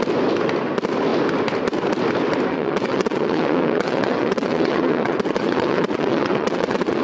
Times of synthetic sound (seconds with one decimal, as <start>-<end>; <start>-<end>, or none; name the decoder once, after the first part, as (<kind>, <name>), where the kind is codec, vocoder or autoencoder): 2.5-7.0 (vocoder, WaveNeXt)